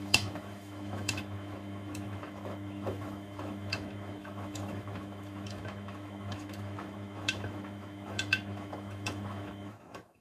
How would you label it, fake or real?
fake